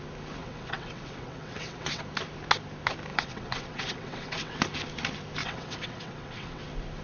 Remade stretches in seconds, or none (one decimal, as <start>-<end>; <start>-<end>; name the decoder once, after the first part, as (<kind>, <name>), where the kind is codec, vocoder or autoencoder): 0.4-2.0 (vocoder, WaveNeXt); 3.1-4.6; 5.4-6.6